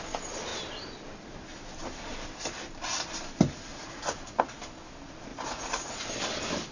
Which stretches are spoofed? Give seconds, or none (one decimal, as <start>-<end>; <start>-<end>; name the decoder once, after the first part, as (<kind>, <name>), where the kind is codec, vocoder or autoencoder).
3.7-4.4 (vocoder, Vocos); 5.3-5.9